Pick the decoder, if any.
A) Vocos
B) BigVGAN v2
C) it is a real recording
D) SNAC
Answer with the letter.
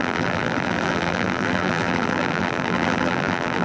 B